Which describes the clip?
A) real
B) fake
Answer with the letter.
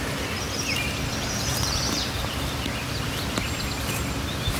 B